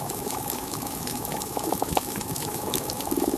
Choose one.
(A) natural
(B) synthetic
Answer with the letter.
B